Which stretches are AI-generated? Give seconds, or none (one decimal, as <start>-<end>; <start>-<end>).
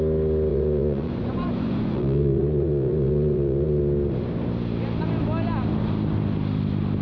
0.5-3.8